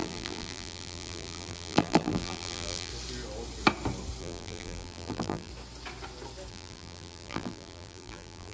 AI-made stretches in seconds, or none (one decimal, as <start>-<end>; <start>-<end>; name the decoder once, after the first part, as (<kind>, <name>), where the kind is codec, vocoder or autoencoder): 0.0-2.9 (vocoder, BigVGAN v2); 4.2-5.5; 6.5-8.5